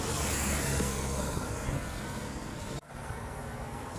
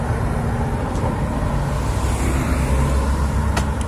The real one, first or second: second